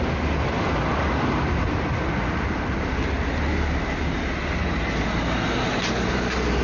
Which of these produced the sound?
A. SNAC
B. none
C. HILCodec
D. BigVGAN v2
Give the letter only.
B